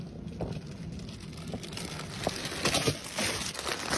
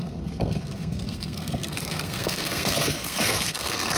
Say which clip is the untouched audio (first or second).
first